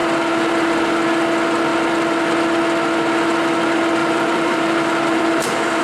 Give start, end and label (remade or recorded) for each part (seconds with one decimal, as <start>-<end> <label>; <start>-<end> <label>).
0.0-4.0 recorded; 4.0-5.8 remade

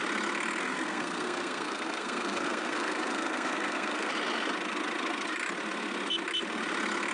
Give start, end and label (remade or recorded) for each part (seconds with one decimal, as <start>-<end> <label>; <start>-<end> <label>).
0.0-0.6 recorded; 0.6-4.1 remade; 4.1-7.1 recorded

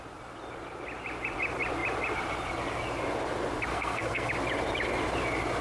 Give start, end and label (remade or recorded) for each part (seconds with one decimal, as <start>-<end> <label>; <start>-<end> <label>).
0.0-3.7 recorded; 3.7-4.3 remade; 4.3-5.6 recorded

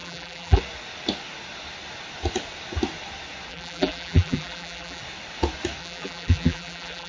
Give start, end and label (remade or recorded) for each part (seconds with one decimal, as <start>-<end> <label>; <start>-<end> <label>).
0.0-0.6 remade; 0.6-3.5 recorded; 3.5-5.0 remade; 5.0-5.8 recorded; 5.8-7.1 remade

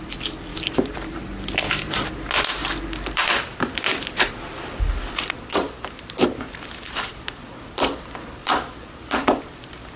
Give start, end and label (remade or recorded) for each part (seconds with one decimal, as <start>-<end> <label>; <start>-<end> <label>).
0.0-0.5 recorded; 0.5-1.2 remade; 1.2-2.6 recorded; 2.6-7.4 remade; 7.4-8.4 recorded; 8.4-9.6 remade; 9.6-10.0 recorded